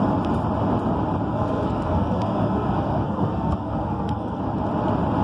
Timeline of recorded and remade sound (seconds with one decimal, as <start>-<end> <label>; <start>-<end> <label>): 0.0-1.3 recorded; 1.3-4.4 remade; 4.4-5.2 recorded